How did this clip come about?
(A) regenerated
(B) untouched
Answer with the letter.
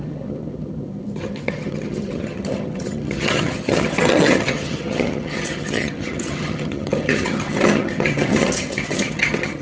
A